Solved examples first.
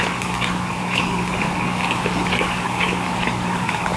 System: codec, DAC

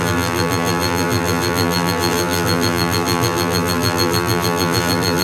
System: vocoder, BigVGAN v2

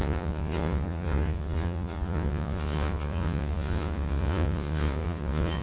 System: vocoder, Vocos